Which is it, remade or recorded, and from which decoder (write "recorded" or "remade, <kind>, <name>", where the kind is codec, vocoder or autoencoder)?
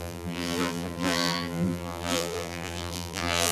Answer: remade, vocoder, BigVGAN v2